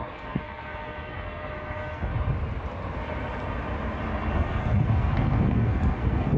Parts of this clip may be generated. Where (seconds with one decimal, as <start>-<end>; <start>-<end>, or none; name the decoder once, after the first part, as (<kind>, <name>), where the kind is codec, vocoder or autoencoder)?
0.0-2.1 (codec, SNAC); 4.3-6.4